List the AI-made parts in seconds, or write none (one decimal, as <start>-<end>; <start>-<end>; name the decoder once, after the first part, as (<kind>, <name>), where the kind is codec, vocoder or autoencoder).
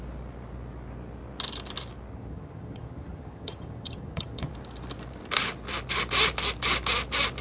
2.1-4.5 (vocoder, HiFi-GAN)